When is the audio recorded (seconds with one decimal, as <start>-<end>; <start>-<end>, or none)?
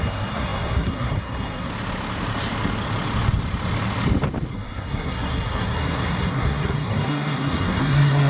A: 1.7-4.5